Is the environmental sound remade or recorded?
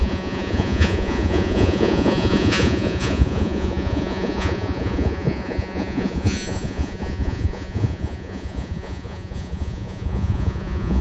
remade